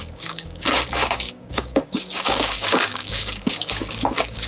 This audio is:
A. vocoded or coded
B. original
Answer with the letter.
A